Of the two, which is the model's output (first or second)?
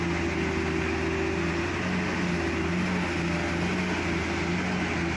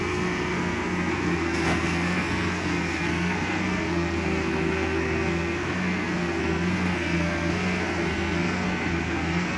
second